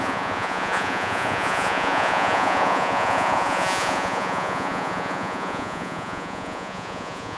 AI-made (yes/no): yes